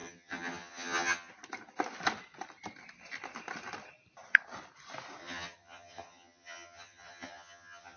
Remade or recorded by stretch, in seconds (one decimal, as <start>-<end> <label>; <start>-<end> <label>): 0.0-1.3 remade; 1.3-5.2 recorded; 5.2-8.0 remade